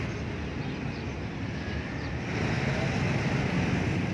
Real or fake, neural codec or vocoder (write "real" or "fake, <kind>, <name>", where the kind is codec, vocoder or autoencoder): real